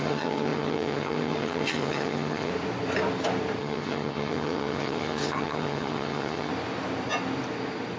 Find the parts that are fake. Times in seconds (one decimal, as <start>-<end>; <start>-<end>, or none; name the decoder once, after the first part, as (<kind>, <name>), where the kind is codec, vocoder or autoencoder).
0.0-2.5 (vocoder, HiFi-GAN); 3.6-6.5